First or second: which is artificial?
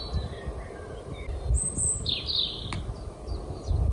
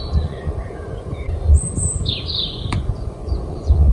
second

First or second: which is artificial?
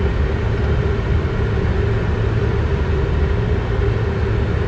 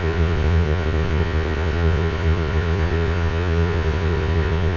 second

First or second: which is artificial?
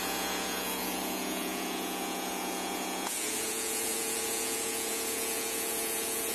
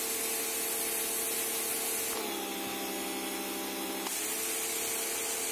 first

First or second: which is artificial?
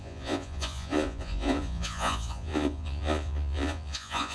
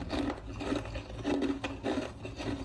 first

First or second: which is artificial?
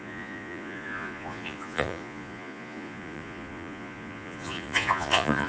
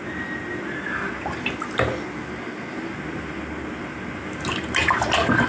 first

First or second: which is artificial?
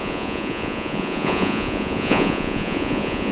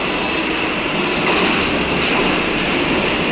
first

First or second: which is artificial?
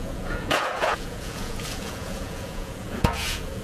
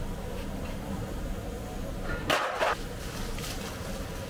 first